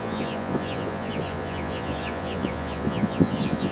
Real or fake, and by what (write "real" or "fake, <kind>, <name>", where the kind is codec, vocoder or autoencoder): fake, vocoder, Vocos